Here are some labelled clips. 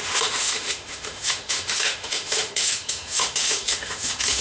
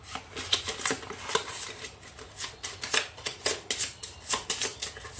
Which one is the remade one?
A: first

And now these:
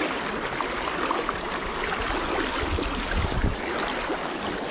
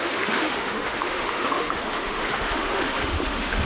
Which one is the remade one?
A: second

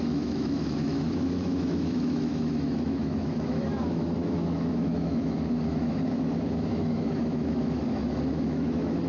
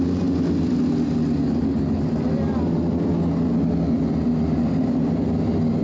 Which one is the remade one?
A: first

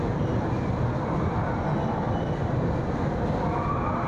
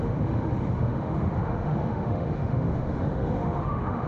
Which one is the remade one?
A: second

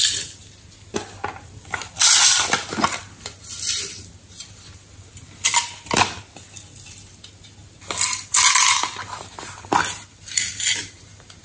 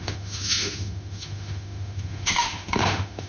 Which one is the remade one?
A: second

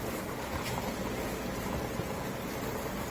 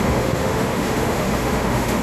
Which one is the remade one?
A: second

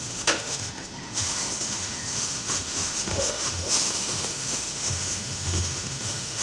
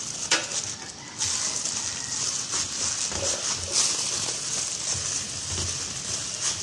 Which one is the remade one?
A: first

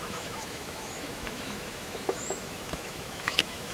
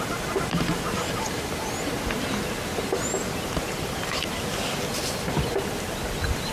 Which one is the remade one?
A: first